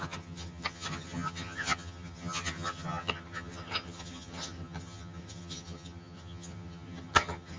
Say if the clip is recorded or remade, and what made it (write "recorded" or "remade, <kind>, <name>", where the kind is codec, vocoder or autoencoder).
remade, vocoder, HiFi-GAN